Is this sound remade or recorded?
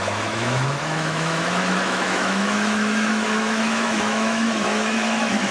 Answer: remade